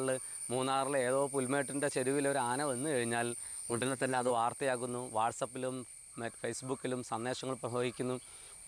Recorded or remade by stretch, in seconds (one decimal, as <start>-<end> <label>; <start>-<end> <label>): 0.0-3.4 recorded; 3.4-4.3 remade; 4.3-8.7 recorded